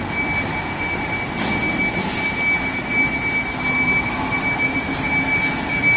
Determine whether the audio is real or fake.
real